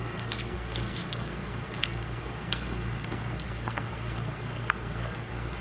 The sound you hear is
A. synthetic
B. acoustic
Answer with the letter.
A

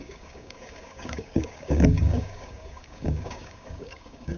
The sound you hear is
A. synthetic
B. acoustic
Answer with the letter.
A